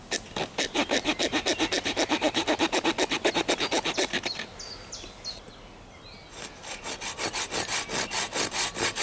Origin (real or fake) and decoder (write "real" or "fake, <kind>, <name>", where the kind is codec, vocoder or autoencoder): real